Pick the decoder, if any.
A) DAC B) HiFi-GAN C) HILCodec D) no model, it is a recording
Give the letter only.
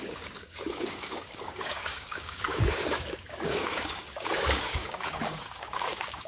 A